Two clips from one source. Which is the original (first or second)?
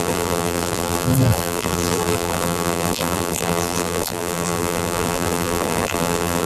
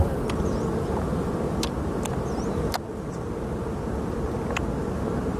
second